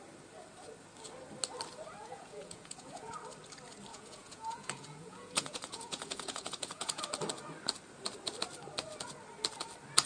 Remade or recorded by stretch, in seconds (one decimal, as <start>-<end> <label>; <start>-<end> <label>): 0.0-2.0 recorded; 2.0-3.1 remade; 3.1-3.9 recorded; 3.9-7.0 remade; 7.0-10.1 recorded